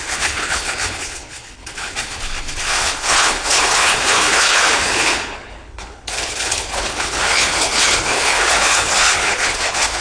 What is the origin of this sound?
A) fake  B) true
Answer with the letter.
A